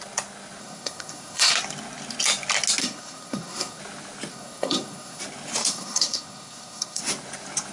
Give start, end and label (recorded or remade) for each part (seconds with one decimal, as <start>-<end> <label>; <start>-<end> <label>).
0.0-0.6 recorded; 0.6-1.5 remade; 1.5-2.8 recorded; 2.8-3.8 remade; 3.8-4.3 recorded; 4.3-5.2 remade; 5.2-5.7 recorded; 5.7-7.0 remade; 7.0-7.7 recorded